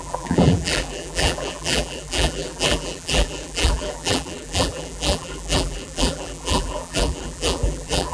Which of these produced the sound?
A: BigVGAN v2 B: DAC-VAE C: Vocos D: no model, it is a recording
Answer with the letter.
A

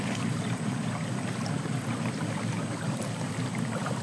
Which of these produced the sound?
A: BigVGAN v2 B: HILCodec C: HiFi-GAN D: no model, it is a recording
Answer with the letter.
D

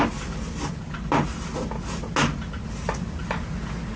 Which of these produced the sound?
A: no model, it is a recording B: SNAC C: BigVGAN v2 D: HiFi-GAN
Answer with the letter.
A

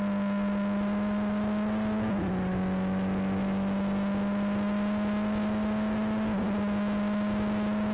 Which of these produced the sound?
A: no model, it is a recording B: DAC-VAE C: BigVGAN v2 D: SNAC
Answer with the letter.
A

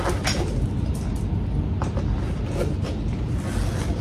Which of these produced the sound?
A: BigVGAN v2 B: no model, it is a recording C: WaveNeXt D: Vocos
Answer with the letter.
B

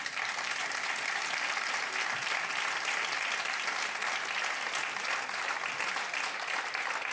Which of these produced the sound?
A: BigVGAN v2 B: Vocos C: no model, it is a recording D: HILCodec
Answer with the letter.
C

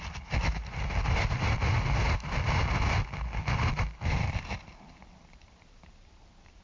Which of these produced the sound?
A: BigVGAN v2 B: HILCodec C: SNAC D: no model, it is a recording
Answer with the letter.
D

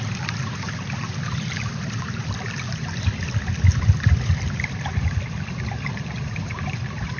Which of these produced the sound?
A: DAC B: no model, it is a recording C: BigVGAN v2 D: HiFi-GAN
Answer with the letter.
B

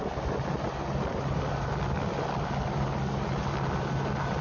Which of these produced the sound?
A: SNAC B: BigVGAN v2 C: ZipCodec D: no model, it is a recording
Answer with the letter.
D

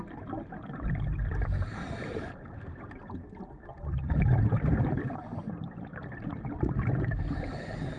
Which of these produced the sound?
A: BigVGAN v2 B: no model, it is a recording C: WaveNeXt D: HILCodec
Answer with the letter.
A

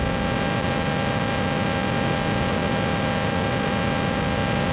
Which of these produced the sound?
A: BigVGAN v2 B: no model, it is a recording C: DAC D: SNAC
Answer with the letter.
B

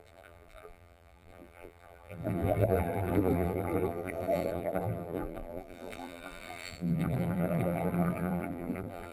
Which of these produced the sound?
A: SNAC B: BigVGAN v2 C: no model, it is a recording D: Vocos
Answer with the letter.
B